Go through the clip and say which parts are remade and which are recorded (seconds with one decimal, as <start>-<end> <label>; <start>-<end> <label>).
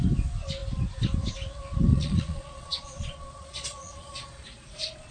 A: 0.0-1.9 recorded; 1.9-5.1 remade